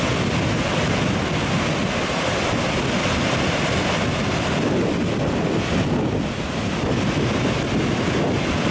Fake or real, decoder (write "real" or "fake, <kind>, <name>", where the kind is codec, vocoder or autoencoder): real